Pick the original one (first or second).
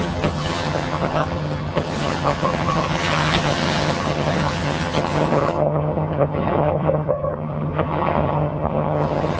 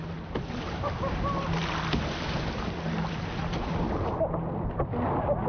second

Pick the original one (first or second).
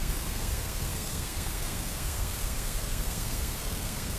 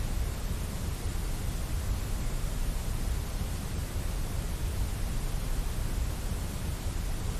second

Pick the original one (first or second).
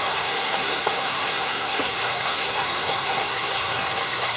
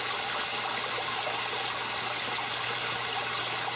second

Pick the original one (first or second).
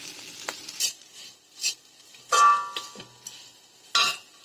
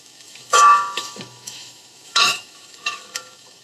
first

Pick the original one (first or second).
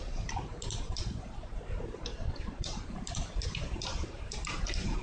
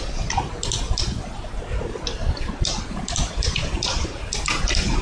second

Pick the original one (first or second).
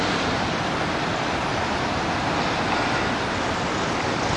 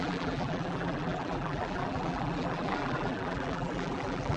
first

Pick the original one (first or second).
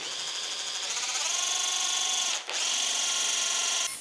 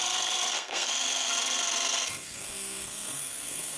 first